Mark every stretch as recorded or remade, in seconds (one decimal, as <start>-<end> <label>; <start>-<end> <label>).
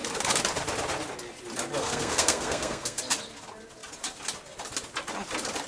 0.0-1.8 recorded; 1.8-3.0 remade; 3.0-5.7 recorded